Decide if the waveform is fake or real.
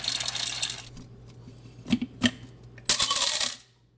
real